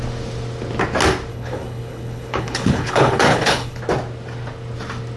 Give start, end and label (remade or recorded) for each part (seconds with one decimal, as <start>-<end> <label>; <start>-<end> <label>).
0.0-1.3 recorded; 1.3-3.8 remade; 3.8-5.2 recorded